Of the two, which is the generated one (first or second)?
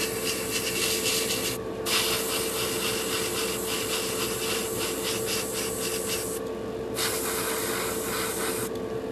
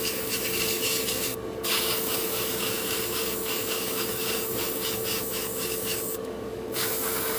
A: second